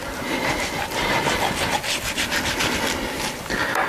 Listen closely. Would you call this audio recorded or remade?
recorded